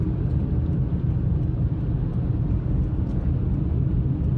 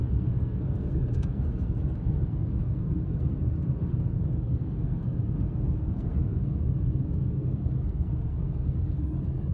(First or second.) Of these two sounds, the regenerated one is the second